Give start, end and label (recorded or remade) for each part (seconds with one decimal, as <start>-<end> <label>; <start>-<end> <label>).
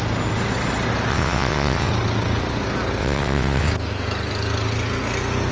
0.0-1.1 recorded; 1.1-1.9 remade; 1.9-3.0 recorded; 3.0-3.7 remade; 3.7-5.5 recorded